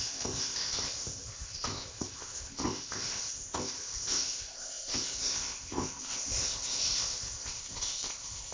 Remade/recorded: remade